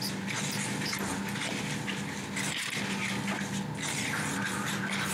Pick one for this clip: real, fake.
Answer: real